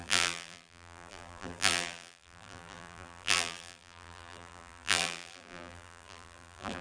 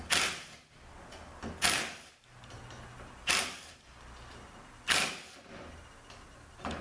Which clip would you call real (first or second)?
second